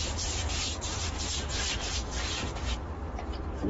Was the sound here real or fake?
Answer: real